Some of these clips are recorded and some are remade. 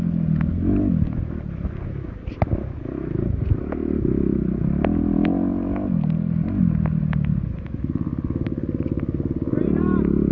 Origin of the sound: recorded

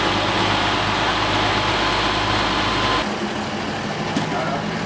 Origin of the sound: recorded